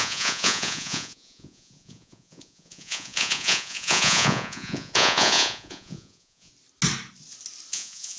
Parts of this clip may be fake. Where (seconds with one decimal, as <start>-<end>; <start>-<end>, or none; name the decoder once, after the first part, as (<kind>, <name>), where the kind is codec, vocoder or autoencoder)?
0.0-6.5 (vocoder, Vocos); 7.7-8.2